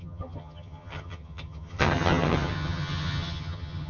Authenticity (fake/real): fake